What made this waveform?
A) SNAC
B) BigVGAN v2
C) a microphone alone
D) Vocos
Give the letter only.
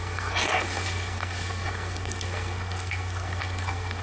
A